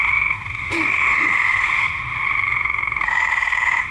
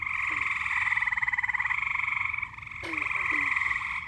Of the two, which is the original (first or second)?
second